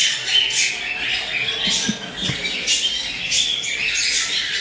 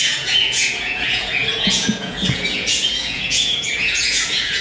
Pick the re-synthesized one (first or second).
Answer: second